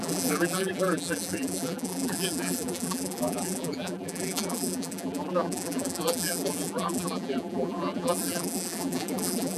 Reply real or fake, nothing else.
fake